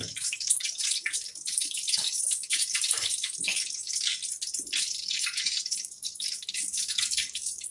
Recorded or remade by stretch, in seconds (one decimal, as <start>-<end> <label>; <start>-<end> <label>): 0.0-4.2 remade; 4.2-4.8 recorded; 4.8-7.7 remade